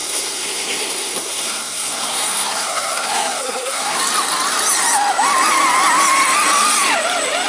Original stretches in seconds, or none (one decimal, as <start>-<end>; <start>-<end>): 4.0-7.5